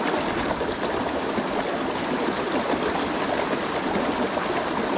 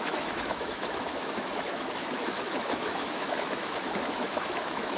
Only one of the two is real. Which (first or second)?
first